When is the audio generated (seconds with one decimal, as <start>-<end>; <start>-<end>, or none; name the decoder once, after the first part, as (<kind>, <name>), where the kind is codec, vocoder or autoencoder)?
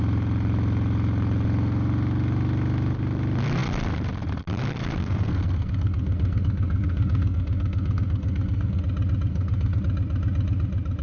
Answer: 5.0-8.8 (codec, SNAC); 9.3-9.8